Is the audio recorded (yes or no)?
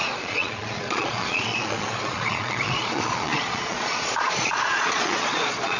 no